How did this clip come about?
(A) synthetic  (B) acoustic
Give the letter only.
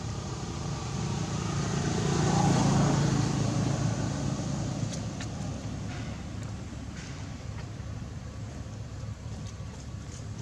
A